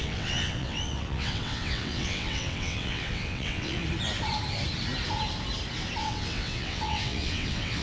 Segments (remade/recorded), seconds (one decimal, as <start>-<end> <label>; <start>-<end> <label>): 0.0-3.8 remade; 3.8-6.0 recorded; 6.0-7.8 remade